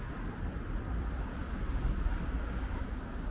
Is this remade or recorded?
recorded